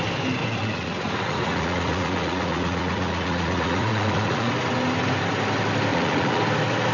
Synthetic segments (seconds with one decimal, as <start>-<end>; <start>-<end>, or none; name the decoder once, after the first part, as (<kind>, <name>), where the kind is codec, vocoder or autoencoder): 0.4-4.5 (vocoder, Vocos); 5.9-6.4